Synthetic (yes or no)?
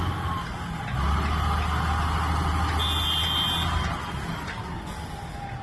no